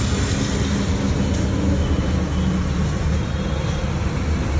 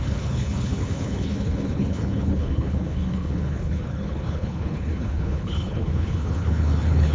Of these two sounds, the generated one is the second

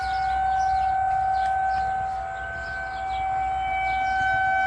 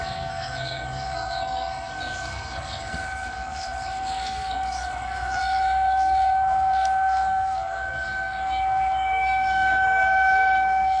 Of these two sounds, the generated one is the second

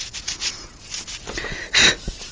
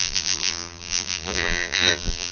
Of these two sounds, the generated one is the second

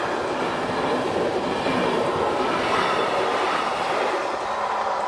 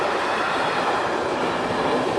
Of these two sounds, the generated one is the second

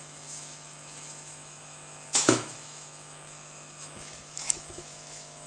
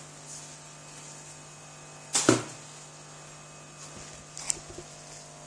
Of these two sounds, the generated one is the first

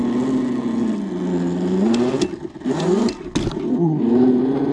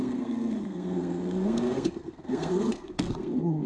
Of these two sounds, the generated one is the second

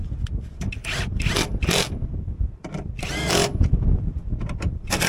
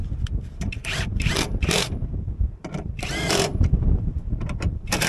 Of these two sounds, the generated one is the second